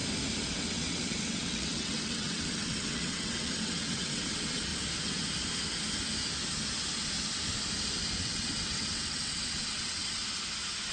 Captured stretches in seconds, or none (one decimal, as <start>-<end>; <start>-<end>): 0.0-0.5; 4.7-8.2; 10.2-10.9